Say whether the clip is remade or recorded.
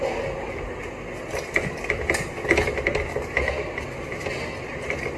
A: recorded